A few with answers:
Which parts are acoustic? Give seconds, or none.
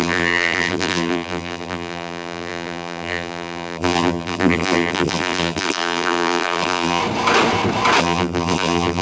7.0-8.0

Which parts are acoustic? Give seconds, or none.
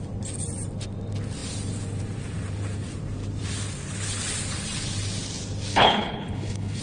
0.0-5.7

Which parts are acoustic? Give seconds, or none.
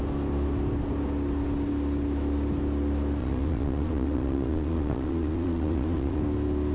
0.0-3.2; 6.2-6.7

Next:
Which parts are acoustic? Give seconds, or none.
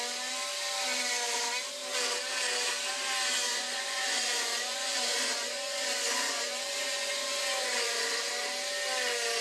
0.0-3.5; 8.3-9.4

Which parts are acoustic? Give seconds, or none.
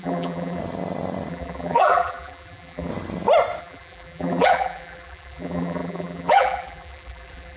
0.6-1.3; 2.9-3.6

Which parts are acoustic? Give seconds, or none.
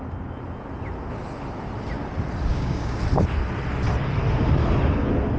0.0-2.5; 3.0-5.4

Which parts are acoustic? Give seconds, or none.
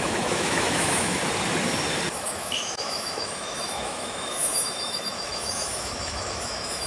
1.2-2.1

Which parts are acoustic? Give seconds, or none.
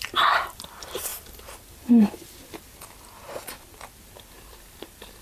1.1-3.9